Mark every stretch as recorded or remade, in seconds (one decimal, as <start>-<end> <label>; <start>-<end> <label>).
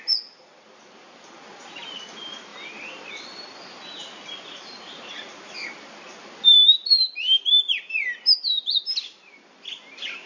0.0-10.3 recorded